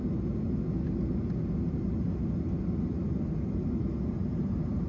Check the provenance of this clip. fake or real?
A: real